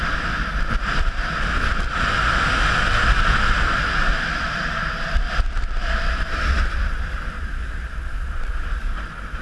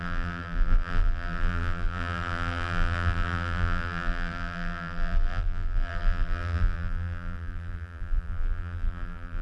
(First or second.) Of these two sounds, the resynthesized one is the second